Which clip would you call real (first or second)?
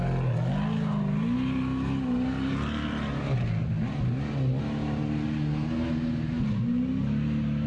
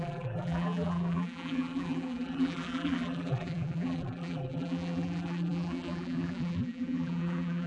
first